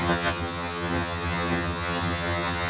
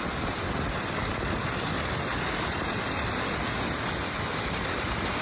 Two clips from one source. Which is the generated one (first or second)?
first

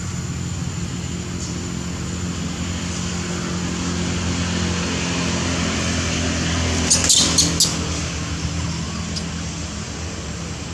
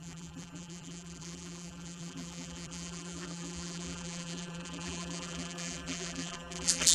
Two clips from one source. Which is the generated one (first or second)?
second